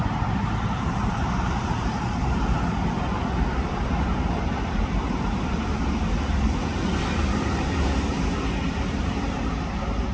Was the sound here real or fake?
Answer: fake